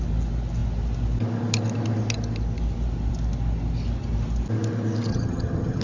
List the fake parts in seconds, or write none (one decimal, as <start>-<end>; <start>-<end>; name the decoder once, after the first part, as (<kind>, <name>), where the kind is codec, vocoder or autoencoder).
5.1-5.8 (vocoder, HiFi-GAN)